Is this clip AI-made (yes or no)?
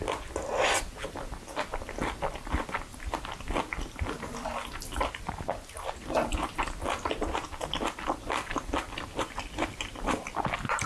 no